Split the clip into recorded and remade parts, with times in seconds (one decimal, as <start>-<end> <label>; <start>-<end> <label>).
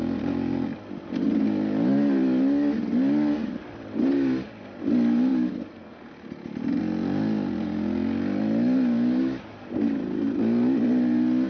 0.0-11.5 recorded